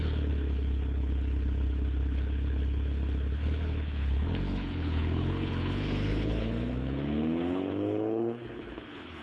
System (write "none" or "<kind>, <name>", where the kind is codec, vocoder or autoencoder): codec, HILCodec